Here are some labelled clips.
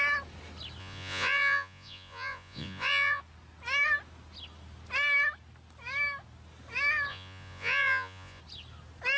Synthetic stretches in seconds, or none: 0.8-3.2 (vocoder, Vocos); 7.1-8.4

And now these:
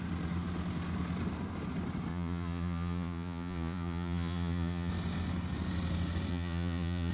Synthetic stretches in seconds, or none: 2.1-4.9 (vocoder, Vocos); 6.3-7.1

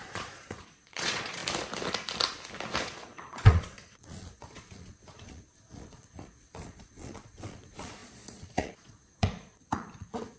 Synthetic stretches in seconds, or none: 0.0-1.4 (vocoder, Vocos); 2.8-10.4

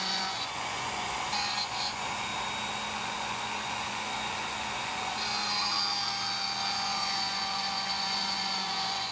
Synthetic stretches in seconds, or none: 0.0-2.3 (vocoder, Vocos); 2.9-5.4; 6.7-9.1

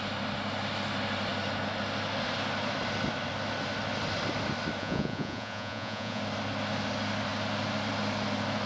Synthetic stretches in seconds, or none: 4.8-6.2 (vocoder, Vocos)